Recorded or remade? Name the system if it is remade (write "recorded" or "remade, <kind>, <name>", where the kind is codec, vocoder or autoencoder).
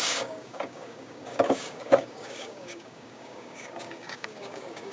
remade, codec, DAC